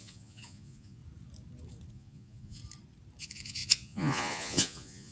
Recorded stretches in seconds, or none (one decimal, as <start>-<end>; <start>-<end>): 1.0-1.9; 2.6-3.2